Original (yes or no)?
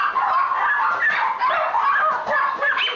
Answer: yes